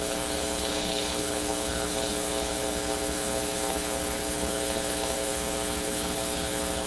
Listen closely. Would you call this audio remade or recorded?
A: remade